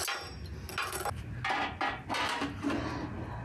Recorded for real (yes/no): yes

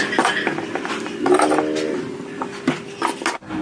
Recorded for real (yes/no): yes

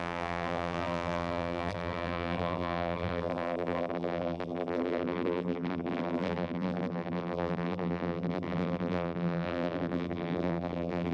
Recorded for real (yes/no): no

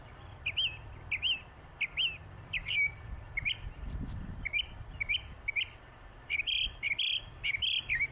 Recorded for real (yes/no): no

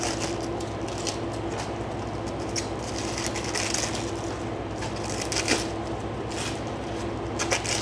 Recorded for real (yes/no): yes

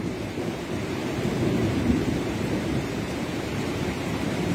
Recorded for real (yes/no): no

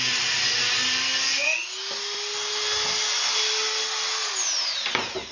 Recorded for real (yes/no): yes